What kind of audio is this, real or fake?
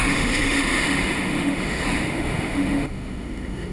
fake